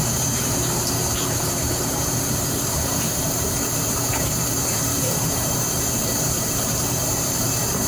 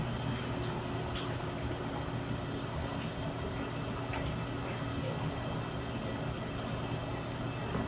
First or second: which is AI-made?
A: first